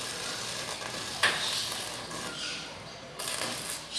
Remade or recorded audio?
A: recorded